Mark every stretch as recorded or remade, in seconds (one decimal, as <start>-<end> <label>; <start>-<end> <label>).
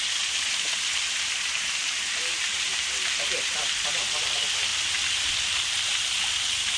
0.0-1.8 recorded; 1.8-3.0 remade; 3.0-6.8 recorded